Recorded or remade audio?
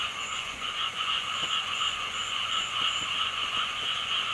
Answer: remade